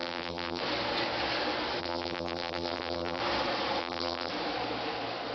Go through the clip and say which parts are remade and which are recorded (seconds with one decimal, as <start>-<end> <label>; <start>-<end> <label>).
0.0-0.6 remade; 0.6-1.8 recorded; 1.8-3.2 remade; 3.2-3.8 recorded; 3.8-4.3 remade; 4.3-5.3 recorded